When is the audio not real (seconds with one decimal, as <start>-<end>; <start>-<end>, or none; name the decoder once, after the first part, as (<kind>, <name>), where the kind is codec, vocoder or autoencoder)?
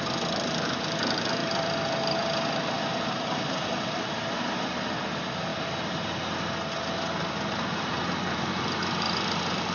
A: 0.0-5.5 (vocoder, BigVGAN v2); 7.3-9.7